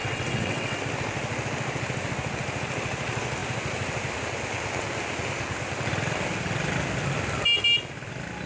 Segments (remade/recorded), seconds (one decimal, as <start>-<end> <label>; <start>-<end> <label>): 0.0-0.8 remade; 0.8-8.5 recorded